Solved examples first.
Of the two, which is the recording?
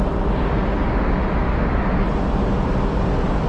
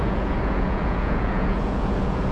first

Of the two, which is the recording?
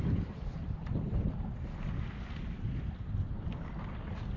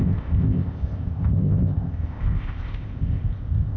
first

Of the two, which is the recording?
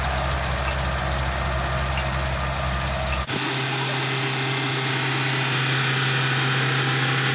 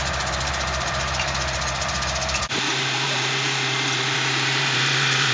first